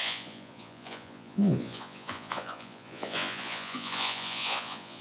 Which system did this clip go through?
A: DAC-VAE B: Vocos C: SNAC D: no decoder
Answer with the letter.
B